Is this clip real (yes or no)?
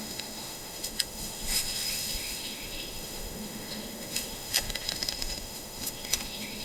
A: no